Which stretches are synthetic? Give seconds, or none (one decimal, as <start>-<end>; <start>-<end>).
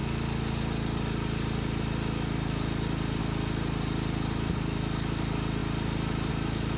none